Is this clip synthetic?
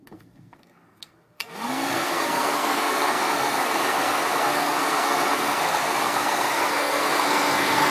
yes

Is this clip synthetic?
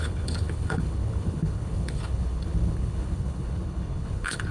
yes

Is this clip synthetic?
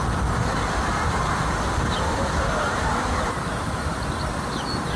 no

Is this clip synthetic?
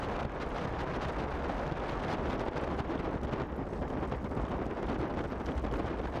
no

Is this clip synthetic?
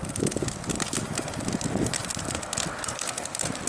no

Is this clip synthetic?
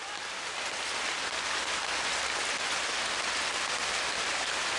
no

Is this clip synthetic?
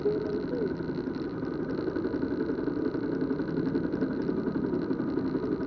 no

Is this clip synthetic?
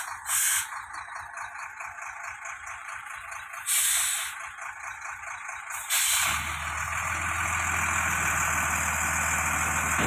no